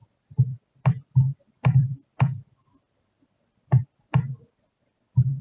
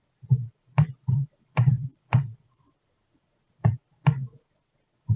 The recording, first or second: first